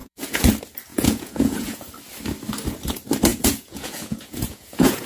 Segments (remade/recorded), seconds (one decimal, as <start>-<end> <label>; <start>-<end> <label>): 0.0-0.5 remade; 0.5-0.9 recorded; 0.9-1.9 remade; 1.9-3.3 recorded; 3.3-5.1 remade